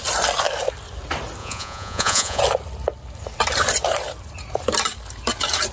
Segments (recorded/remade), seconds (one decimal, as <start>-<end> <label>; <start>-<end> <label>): 0.0-1.4 recorded; 1.4-2.4 remade; 2.4-5.7 recorded